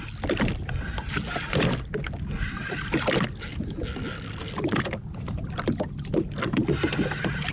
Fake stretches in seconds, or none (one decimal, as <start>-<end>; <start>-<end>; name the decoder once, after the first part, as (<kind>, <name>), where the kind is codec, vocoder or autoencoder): 2.6-3.2 (vocoder, BigVGAN v2)